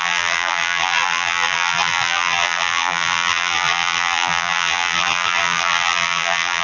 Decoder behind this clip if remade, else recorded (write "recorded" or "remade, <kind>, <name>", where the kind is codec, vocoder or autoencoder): remade, vocoder, BigVGAN v2